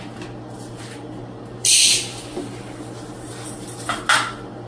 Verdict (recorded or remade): recorded